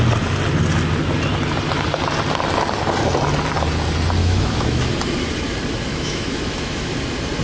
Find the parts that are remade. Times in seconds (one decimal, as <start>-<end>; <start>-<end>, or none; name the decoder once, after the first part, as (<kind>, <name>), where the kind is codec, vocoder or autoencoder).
4.2-4.9 (autoencoder, DAC-VAE); 5.9-6.9